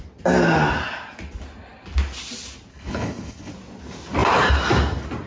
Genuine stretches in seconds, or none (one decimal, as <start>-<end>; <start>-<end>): 0.0-2.7; 3.5-5.3